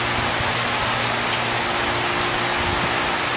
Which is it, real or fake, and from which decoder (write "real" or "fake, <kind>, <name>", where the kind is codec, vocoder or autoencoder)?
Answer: real